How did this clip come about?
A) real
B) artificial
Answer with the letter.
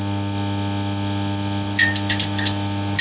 A